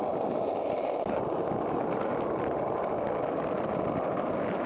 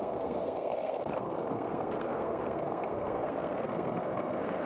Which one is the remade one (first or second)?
second